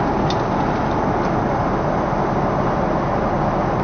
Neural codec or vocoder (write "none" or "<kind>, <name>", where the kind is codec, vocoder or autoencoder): none